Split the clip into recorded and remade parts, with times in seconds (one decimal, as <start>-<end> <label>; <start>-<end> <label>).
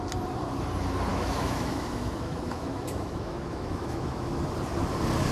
0.0-1.1 recorded; 1.1-4.3 remade; 4.3-5.3 recorded